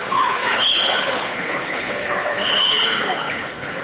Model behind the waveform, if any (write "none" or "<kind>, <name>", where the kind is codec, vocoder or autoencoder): codec, HILCodec